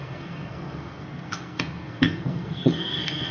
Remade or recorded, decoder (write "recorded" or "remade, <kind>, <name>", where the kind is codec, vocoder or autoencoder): remade, codec, SNAC